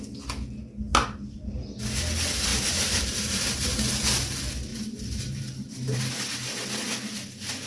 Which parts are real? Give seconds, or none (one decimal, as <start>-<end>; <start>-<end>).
0.0-0.9; 1.5-2.5; 3.8-4.7; 6.0-7.7